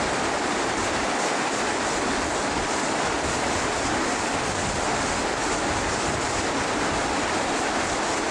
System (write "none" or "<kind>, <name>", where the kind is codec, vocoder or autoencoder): none